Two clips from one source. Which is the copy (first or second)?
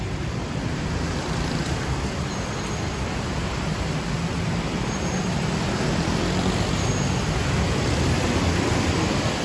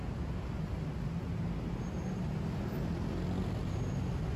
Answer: first